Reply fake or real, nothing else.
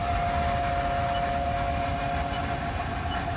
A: real